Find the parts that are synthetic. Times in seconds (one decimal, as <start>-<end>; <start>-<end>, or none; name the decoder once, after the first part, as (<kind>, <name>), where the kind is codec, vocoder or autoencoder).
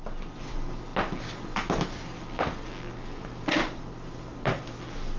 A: none